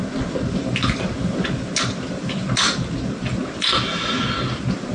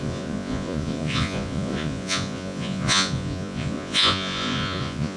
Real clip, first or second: first